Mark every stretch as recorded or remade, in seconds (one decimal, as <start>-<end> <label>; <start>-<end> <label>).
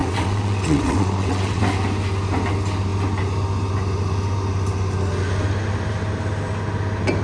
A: 0.0-1.6 remade; 1.6-7.2 recorded